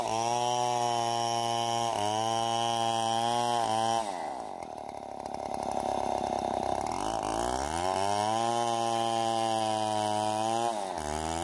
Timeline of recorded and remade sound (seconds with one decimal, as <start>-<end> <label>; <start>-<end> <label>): 0.0-11.4 recorded